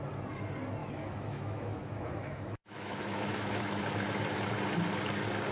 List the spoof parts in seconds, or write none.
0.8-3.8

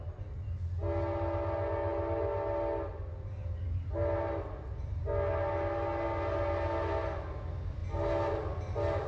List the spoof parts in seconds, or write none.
none

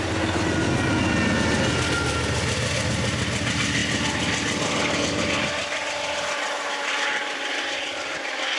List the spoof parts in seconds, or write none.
none

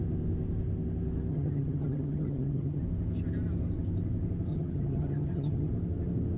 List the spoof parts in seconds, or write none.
1.3-2.8; 4.5-5.7

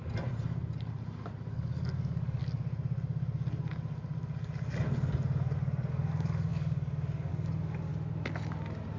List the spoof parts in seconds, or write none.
1.5-2.4; 5.9-7.9

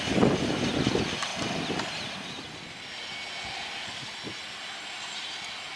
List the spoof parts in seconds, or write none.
none